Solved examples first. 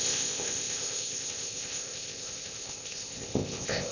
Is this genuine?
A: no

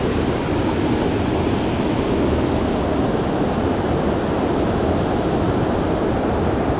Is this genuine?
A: yes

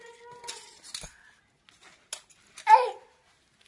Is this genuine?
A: yes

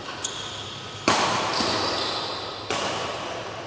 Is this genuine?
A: yes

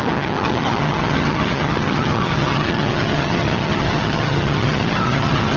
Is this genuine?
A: no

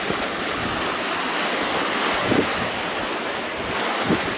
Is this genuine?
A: yes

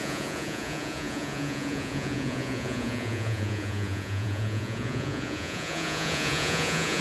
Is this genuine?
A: no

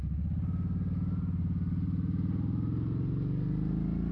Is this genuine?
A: yes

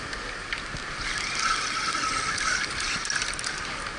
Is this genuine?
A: yes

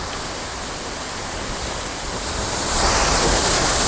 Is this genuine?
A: yes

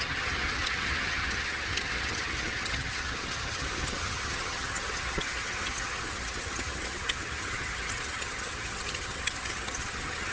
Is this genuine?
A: no